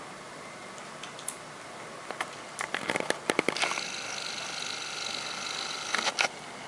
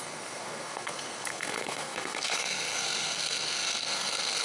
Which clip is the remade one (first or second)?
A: second